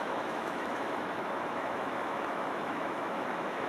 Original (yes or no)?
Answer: no